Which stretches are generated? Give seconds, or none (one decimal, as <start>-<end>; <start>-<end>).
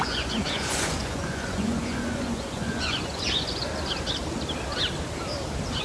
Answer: 0.0-3.6